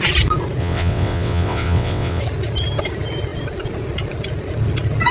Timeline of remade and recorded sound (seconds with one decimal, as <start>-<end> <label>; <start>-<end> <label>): 0.0-0.6 recorded; 0.6-2.2 remade; 2.2-5.1 recorded